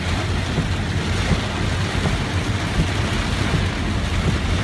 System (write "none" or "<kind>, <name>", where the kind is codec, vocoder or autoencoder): none